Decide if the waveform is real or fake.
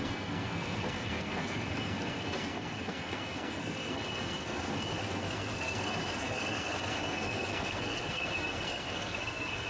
fake